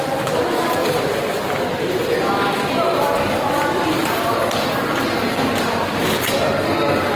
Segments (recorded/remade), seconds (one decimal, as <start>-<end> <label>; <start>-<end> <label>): 0.0-7.2 remade